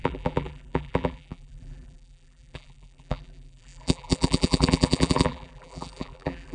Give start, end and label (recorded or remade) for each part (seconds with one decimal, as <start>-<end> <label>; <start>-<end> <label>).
0.0-6.5 remade